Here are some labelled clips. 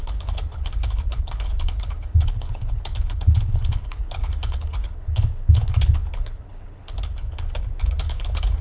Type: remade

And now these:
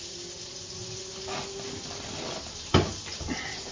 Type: recorded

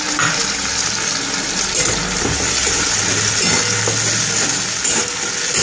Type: recorded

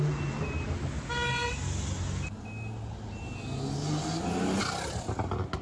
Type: recorded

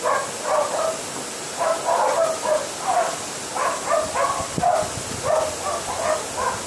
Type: recorded